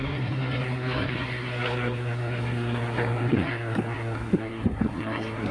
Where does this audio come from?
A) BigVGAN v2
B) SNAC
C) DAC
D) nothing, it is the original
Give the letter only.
B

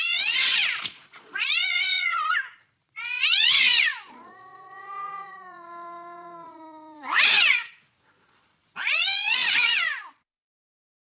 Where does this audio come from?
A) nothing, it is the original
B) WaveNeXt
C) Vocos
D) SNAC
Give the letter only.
C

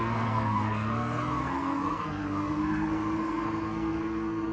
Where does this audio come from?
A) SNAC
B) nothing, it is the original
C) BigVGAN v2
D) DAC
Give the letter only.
A